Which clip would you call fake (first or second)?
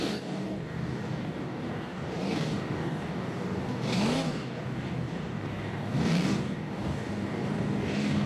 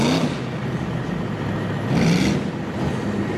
first